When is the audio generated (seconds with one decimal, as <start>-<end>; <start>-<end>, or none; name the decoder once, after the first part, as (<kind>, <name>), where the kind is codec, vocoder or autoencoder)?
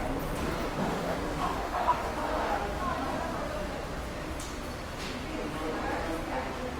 0.8-2.6 (autoencoder, DAC-VAE)